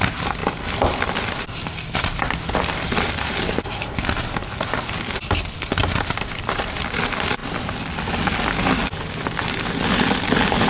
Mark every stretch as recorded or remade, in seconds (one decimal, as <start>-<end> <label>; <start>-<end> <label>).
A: 0.0-0.4 recorded; 0.4-4.1 remade; 4.1-5.8 recorded; 5.8-7.0 remade; 7.0-10.7 recorded